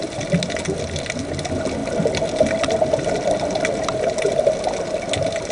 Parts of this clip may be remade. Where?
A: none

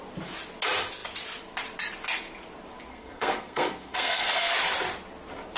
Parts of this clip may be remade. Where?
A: 2.9-4.5 (codec, SNAC)